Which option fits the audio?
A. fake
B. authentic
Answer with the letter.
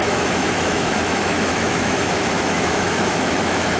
A